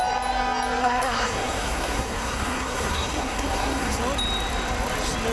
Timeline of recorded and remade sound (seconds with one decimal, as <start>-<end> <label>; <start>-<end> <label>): 0.0-0.8 recorded; 0.8-4.0 remade; 4.0-5.3 recorded